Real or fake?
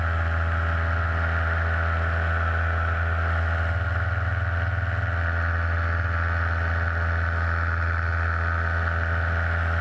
real